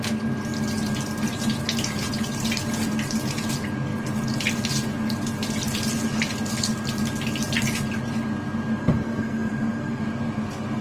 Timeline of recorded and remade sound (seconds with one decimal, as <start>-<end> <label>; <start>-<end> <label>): 0.0-8.8 recorded; 8.8-10.0 remade; 10.0-10.8 recorded